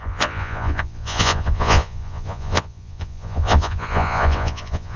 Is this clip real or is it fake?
fake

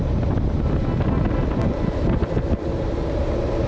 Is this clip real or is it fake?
real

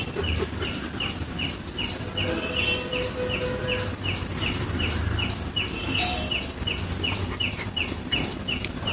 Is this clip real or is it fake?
real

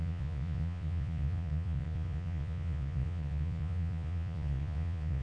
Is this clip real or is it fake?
fake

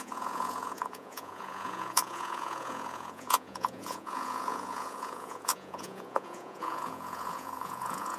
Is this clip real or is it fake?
fake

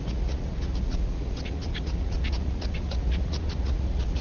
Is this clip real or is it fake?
fake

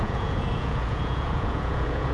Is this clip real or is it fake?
fake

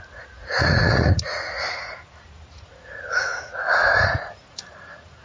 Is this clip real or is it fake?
fake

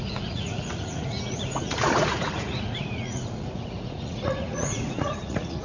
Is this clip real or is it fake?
fake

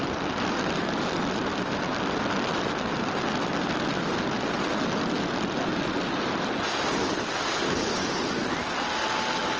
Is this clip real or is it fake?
real